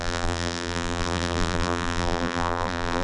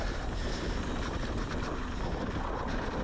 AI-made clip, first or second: first